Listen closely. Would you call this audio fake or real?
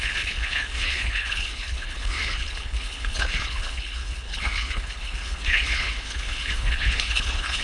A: fake